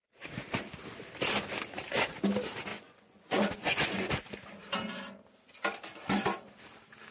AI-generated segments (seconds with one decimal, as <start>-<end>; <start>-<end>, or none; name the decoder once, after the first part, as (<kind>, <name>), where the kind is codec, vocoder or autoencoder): 2.7-4.1 (vocoder, Vocos)